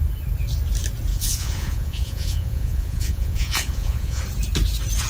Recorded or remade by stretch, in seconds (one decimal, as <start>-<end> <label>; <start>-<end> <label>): 0.0-1.1 recorded; 1.1-4.2 remade; 4.2-5.1 recorded